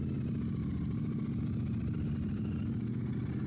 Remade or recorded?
recorded